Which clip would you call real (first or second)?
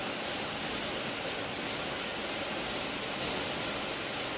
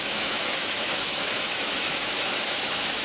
first